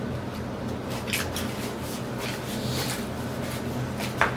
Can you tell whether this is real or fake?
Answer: real